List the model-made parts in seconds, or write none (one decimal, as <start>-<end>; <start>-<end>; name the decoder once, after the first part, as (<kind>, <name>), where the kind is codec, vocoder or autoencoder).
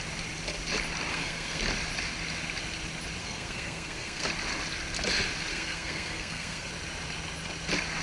1.1-1.6 (codec, SNAC); 3.2-4.3; 5.5-6.7